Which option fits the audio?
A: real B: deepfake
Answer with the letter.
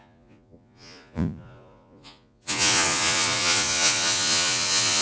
B